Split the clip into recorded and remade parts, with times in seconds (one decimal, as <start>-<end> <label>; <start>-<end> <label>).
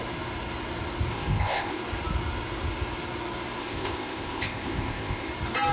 0.0-1.1 recorded; 1.1-1.8 remade; 1.8-3.6 recorded; 3.6-5.3 remade; 5.3-5.7 recorded